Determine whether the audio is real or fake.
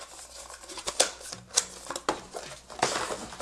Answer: real